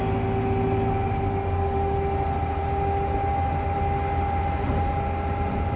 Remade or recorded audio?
recorded